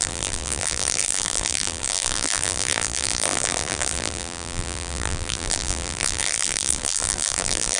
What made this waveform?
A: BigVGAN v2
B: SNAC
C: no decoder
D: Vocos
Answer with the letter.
A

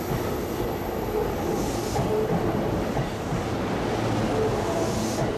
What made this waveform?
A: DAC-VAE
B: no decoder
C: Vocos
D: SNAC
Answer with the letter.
B